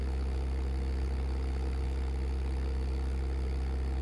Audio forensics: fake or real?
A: real